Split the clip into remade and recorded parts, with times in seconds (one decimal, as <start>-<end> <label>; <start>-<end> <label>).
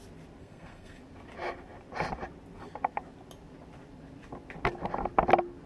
0.0-0.4 recorded; 0.4-1.0 remade; 1.0-5.7 recorded